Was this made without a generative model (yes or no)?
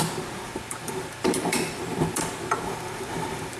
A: no